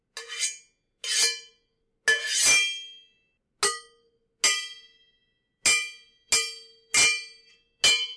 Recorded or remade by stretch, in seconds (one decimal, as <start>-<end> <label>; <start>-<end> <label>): 0.0-8.2 recorded